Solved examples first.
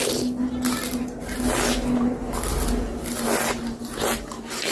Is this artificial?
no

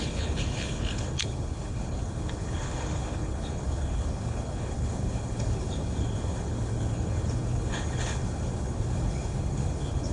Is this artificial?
yes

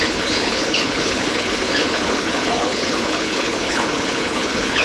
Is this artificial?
yes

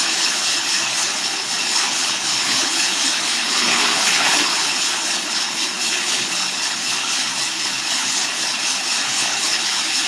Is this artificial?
yes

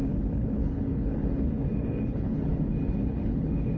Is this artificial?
yes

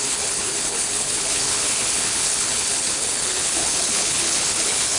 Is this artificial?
yes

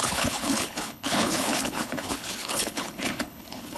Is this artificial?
yes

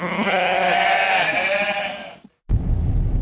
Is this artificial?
no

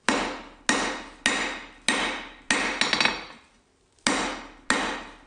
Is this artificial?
no